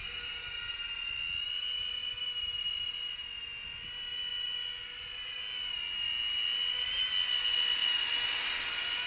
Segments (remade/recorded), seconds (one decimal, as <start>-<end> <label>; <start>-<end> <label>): 0.0-9.1 recorded